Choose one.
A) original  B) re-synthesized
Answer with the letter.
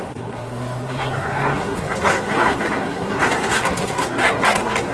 B